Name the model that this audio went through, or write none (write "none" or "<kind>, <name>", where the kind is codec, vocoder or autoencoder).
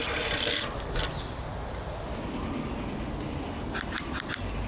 none